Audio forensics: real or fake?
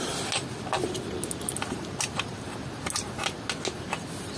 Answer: real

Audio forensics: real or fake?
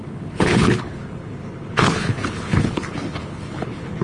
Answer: fake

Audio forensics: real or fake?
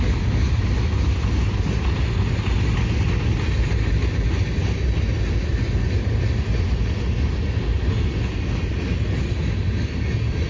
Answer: real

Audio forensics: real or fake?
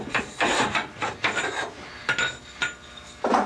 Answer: real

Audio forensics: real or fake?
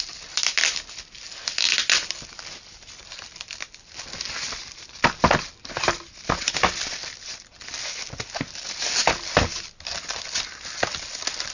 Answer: real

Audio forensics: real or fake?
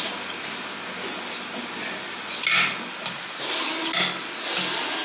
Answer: real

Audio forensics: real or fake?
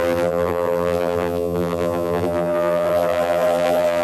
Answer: fake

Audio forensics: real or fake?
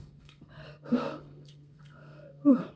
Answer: fake